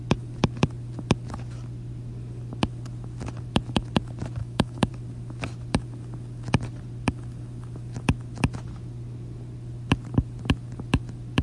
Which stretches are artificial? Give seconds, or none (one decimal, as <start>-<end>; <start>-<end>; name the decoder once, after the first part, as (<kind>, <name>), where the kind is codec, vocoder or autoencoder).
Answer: 4.4-4.9 (autoencoder, DAC-VAE)